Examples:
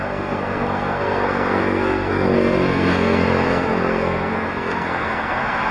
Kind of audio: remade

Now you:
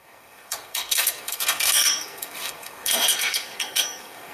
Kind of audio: remade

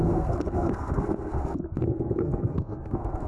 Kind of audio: remade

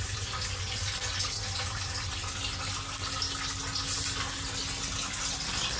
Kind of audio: recorded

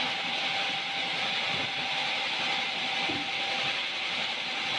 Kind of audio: recorded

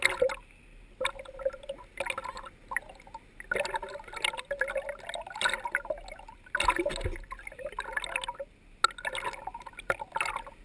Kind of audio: recorded